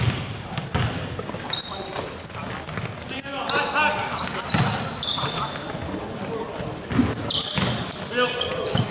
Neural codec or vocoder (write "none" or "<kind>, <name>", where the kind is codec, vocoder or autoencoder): none